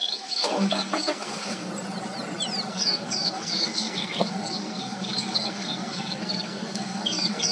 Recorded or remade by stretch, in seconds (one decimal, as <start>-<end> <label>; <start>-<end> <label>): 0.0-1.7 remade; 1.7-2.7 recorded; 2.7-7.5 remade